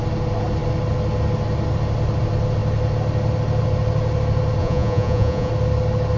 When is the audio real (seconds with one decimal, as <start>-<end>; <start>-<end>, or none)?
0.0-4.6; 5.5-6.2